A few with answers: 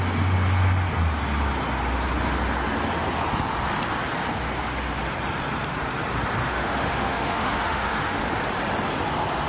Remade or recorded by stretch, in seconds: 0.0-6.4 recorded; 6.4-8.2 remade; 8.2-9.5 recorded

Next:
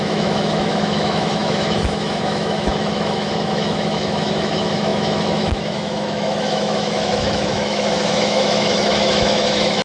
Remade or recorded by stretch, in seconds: 0.0-9.8 remade

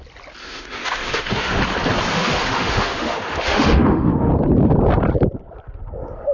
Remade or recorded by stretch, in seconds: 0.0-0.4 recorded; 0.4-1.6 remade; 1.6-2.1 recorded; 2.1-4.3 remade; 4.3-6.3 recorded